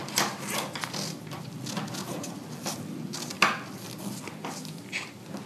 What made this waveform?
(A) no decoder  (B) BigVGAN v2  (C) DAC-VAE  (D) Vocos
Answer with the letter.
A